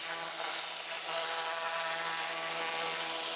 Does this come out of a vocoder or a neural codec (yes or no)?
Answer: no